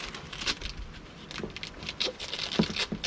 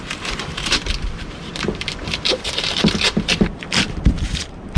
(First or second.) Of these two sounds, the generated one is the second